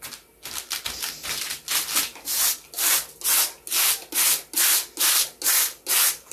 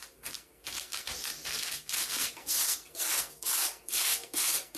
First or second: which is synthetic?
second